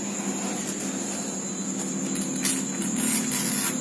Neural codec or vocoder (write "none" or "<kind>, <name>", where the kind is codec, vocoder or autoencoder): none